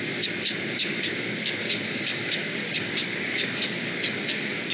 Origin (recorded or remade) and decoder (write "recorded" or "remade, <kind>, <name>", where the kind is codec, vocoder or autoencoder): remade, codec, DAC